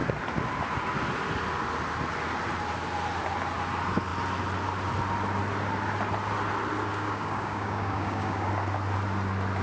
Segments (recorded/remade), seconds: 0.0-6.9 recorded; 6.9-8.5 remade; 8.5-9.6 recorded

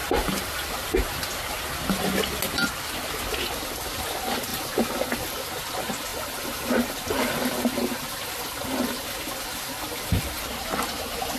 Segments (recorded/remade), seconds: 0.0-1.0 remade; 1.0-4.5 recorded; 4.5-5.4 remade; 5.4-6.1 recorded; 6.1-10.4 remade; 10.4-11.4 recorded

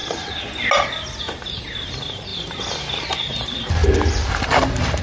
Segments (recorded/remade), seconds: 0.0-1.2 recorded; 1.2-2.3 remade; 2.3-3.0 recorded; 3.0-3.8 remade; 3.8-4.3 recorded; 4.3-5.0 remade